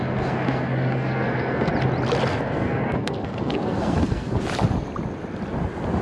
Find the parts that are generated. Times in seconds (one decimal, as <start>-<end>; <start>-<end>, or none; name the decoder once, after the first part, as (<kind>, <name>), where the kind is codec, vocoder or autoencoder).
0.0-1.7 (codec, SNAC); 2.3-4.4